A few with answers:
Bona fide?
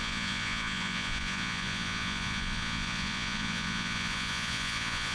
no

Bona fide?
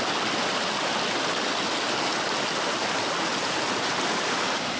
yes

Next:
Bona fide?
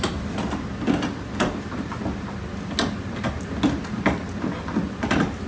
yes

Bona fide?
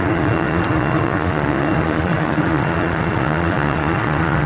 no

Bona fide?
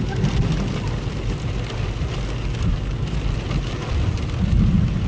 yes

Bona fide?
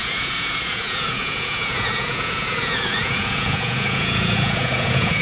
no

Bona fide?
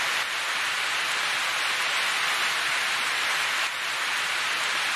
yes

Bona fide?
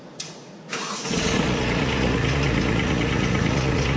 no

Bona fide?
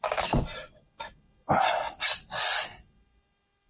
yes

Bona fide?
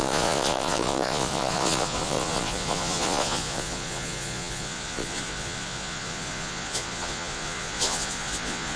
no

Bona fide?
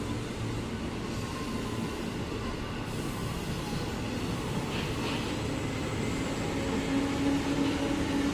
yes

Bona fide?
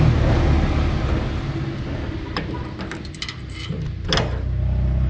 yes